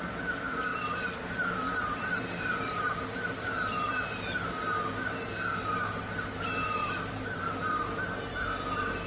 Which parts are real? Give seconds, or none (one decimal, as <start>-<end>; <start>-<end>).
0.0-0.7; 4.4-6.8; 7.5-9.1